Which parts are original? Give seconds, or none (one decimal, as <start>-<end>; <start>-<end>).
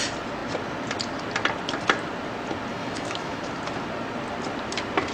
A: 0.0-2.7; 3.4-5.1